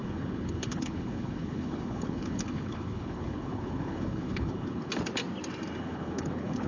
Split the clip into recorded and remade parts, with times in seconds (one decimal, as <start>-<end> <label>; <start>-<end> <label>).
0.0-4.9 remade; 4.9-5.8 recorded; 5.8-6.7 remade